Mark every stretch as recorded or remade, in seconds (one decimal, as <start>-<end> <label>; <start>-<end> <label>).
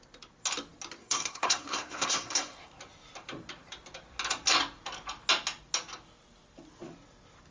0.0-1.0 recorded; 1.0-2.7 remade; 2.7-7.5 recorded